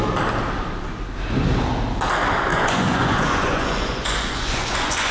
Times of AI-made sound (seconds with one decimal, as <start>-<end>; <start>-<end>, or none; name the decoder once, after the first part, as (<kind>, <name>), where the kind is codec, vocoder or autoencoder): 2.5-5.1 (vocoder, Vocos)